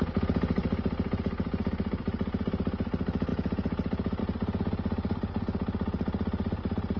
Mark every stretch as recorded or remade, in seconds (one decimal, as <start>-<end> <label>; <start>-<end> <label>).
0.0-7.0 recorded